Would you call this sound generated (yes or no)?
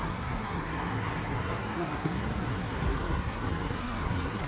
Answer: yes